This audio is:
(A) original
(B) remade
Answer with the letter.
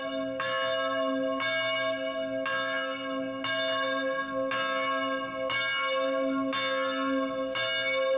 A